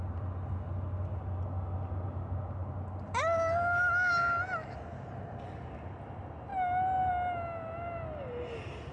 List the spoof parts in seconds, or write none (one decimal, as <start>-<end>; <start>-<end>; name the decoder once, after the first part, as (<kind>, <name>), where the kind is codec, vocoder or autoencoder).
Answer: none